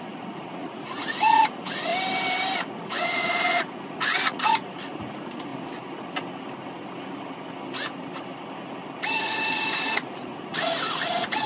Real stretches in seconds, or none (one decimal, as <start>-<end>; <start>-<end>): 1.9-2.7; 5.5-9.1